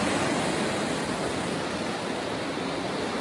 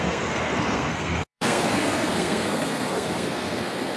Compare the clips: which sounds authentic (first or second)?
first